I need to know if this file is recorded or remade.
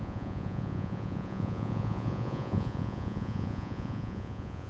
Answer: remade